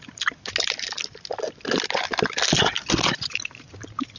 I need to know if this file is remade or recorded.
recorded